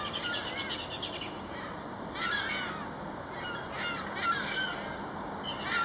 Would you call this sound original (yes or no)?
yes